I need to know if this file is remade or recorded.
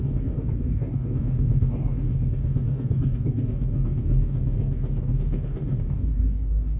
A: remade